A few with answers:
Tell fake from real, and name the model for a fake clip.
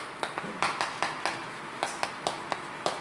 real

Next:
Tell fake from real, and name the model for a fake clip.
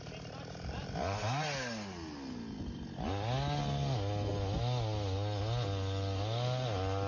real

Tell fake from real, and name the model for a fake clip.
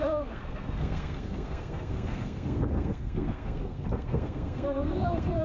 fake, codec, SNAC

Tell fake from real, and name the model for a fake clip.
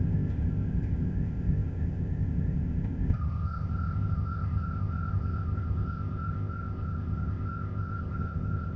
fake, codec, ZipCodec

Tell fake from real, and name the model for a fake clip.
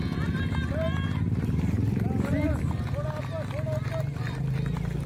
real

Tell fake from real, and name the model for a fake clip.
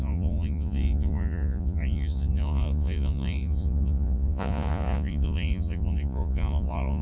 fake, vocoder, Vocos